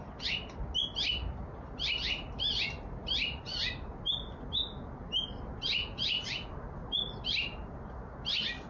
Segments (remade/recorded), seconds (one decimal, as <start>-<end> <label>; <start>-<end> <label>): 0.0-5.8 recorded; 5.8-6.5 remade; 6.5-8.7 recorded